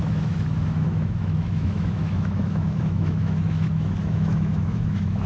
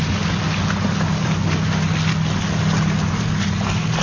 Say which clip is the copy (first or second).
first